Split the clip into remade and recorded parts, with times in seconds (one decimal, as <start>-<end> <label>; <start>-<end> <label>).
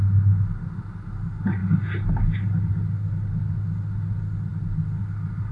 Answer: 0.0-5.5 recorded